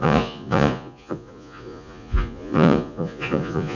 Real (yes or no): no